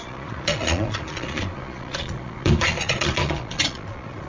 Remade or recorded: remade